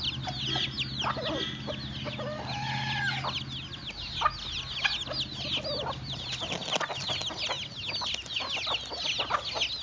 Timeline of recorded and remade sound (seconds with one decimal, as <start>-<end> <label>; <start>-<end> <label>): 0.0-9.8 recorded